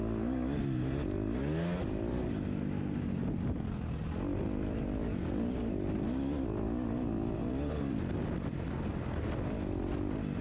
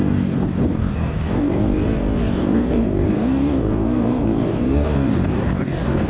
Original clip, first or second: first